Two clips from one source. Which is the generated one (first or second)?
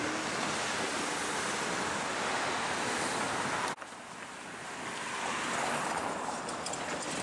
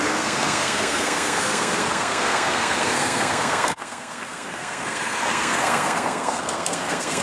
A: second